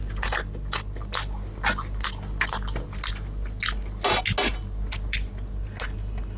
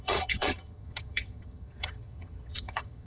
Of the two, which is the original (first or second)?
first